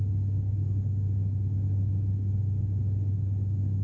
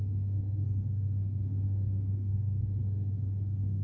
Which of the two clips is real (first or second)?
first